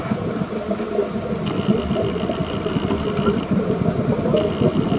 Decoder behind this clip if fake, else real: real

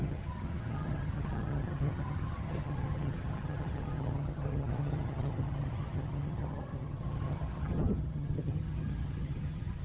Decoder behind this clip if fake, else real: fake, vocoder, HiFi-GAN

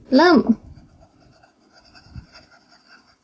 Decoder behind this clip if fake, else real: real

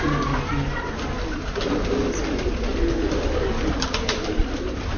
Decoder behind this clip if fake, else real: real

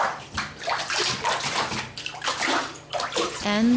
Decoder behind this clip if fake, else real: real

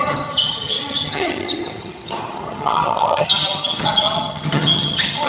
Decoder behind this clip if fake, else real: fake, vocoder, HiFi-GAN